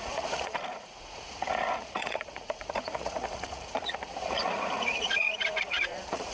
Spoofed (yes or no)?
yes